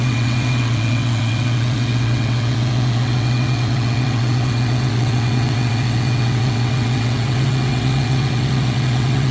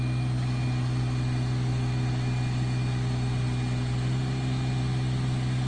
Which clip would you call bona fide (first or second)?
second